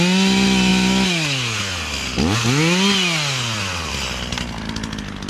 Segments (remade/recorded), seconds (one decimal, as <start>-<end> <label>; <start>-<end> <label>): 0.0-5.3 recorded